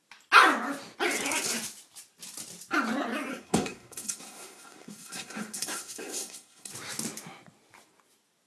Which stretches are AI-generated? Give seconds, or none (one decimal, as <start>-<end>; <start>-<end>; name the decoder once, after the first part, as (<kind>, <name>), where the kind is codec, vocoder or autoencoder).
3.3-6.7 (codec, SNAC)